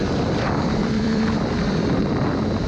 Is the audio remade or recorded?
remade